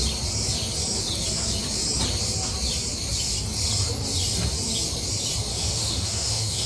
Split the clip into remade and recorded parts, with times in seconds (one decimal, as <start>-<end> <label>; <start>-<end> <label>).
0.0-5.5 recorded; 5.5-6.7 remade